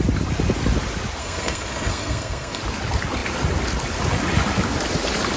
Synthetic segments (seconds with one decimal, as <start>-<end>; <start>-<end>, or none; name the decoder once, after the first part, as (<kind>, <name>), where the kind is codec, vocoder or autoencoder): 1.2-2.6 (codec, SNAC)